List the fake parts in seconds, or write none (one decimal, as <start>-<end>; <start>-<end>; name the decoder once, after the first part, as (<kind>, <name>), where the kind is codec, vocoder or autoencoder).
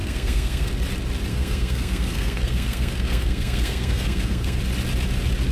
0.0-0.7 (codec, SNAC); 1.3-4.6